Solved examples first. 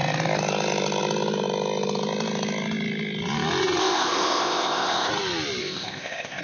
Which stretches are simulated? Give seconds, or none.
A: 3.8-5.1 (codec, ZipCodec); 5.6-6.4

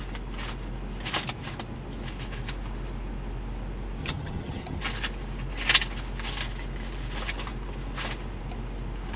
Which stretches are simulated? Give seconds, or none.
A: 4.0-4.8 (vocoder, HiFi-GAN)

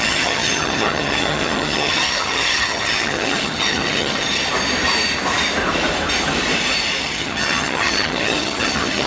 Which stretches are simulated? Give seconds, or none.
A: 0.0-4.4 (vocoder, HiFi-GAN); 7.0-9.1

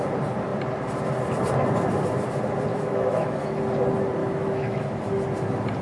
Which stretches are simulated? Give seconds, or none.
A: 2.7-3.6 (autoencoder, DAC-VAE); 4.2-4.8

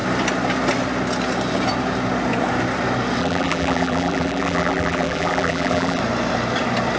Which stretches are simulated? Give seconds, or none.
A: 3.2-6.0 (vocoder, BigVGAN v2)

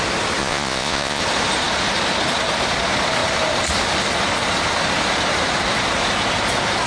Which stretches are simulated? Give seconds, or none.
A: 0.4-1.2 (vocoder, Vocos)